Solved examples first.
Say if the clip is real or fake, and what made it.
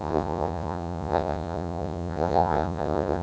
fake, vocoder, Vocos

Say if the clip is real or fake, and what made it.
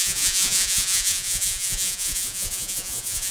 fake, vocoder, Vocos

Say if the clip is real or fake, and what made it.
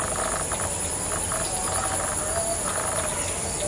real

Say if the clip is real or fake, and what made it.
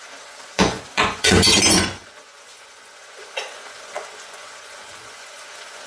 fake, vocoder, Vocos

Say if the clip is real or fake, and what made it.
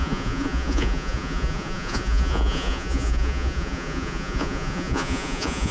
fake, vocoder, Vocos